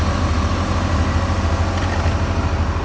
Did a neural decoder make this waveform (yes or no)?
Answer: no